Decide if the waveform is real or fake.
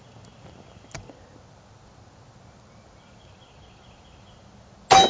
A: real